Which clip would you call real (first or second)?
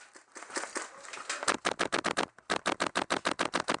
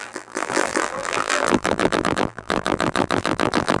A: first